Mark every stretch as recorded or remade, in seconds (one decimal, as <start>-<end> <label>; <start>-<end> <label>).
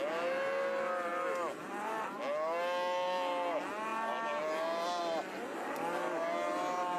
0.0-7.0 recorded